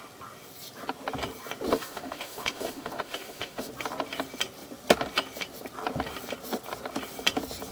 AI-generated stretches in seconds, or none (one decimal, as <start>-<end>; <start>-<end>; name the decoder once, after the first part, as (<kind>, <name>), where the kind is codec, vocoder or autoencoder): 1.7-3.7 (autoencoder, DAC-VAE)